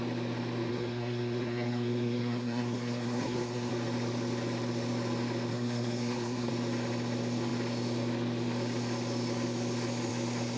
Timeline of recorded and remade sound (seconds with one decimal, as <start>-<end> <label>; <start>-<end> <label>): 0.0-0.7 recorded; 0.7-3.7 remade; 3.7-5.5 recorded; 5.5-6.5 remade; 6.5-10.6 recorded